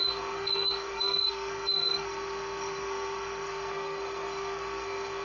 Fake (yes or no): yes